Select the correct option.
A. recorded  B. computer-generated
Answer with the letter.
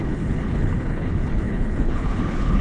B